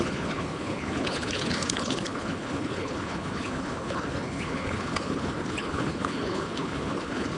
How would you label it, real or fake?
fake